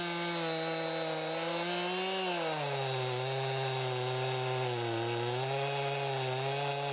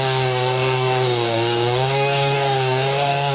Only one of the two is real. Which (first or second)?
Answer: first